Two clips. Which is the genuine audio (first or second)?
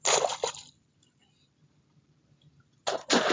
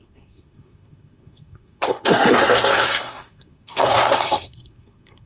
first